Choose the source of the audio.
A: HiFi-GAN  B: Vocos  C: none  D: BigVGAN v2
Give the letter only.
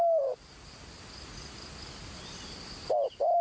C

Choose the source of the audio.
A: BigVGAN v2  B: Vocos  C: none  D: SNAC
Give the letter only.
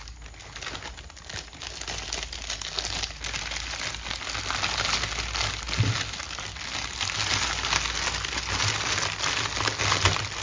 C